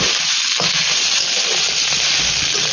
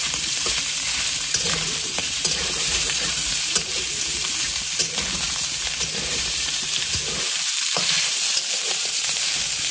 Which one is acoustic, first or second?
first